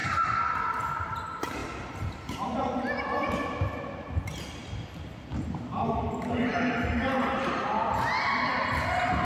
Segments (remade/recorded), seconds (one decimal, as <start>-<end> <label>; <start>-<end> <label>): 0.0-0.7 recorded; 0.7-1.6 remade; 1.6-6.0 recorded; 6.0-6.5 remade; 6.5-7.4 recorded; 7.4-9.2 remade